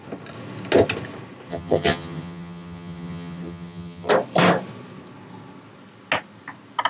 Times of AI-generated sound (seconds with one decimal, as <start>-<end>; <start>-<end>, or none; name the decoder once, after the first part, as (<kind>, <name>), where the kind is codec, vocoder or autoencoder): 1.5-4.1 (vocoder, HiFi-GAN)